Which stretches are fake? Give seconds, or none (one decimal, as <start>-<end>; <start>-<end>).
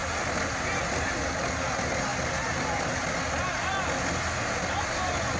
none